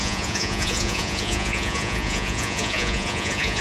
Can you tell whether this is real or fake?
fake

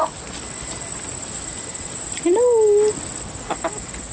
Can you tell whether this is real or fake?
real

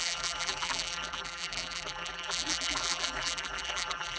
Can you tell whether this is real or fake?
fake